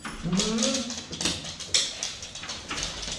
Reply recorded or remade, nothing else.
recorded